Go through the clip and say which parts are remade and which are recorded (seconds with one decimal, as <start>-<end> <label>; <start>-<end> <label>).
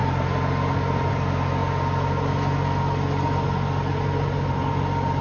0.0-5.2 recorded